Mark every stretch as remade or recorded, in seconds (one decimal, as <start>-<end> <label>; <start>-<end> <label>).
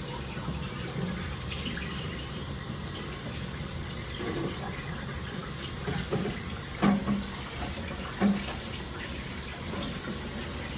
0.0-10.8 recorded